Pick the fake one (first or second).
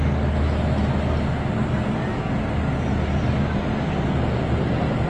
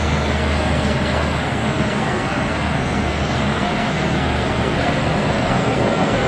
second